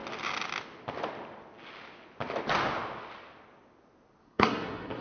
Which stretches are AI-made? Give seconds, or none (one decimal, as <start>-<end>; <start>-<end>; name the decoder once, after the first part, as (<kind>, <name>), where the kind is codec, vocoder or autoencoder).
4.2-5.0 (codec, SNAC)